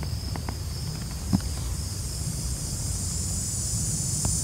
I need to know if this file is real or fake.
fake